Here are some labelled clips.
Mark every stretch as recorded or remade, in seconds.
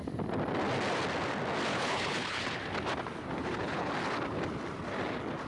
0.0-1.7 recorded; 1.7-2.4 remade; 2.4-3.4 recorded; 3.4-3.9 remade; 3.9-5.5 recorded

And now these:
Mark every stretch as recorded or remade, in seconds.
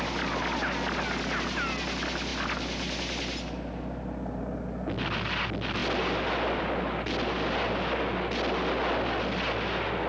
0.0-10.1 recorded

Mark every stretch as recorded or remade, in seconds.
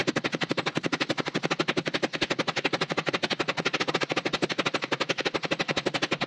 0.0-6.3 recorded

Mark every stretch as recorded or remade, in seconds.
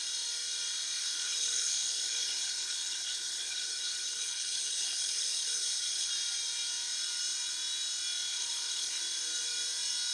0.0-1.0 recorded; 1.0-6.1 remade; 6.1-8.3 recorded; 8.3-9.0 remade; 9.0-10.1 recorded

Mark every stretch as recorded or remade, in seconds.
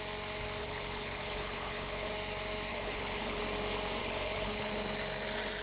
0.0-0.6 recorded; 0.6-2.1 remade; 2.1-2.7 recorded; 2.7-3.4 remade; 3.4-4.0 recorded; 4.0-4.7 remade; 4.7-5.6 recorded